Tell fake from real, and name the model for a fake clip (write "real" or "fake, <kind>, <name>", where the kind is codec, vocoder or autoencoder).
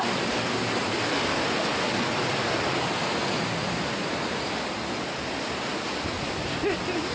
real